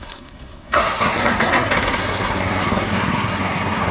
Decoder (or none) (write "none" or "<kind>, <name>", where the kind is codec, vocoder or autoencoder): codec, SNAC